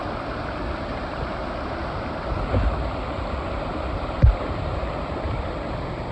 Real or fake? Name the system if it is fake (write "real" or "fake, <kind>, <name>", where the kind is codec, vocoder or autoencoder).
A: real